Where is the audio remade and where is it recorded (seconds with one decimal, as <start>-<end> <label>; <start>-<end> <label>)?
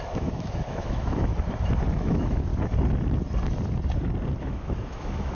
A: 0.0-1.3 remade; 1.3-1.9 recorded; 1.9-2.5 remade; 2.5-4.4 recorded; 4.4-5.3 remade